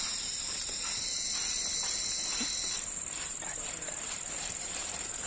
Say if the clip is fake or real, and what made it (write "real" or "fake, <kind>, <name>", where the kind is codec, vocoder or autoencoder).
fake, vocoder, BigVGAN v2